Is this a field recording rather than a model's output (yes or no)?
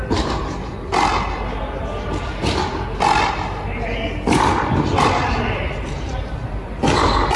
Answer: yes